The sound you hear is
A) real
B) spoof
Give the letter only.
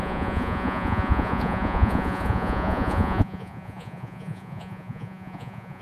B